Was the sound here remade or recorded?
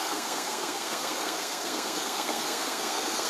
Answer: remade